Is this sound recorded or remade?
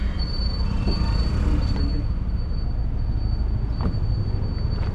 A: recorded